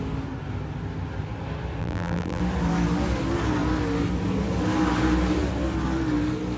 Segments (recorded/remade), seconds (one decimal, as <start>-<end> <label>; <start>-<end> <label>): 0.0-1.8 recorded; 1.8-2.4 remade; 2.4-6.6 recorded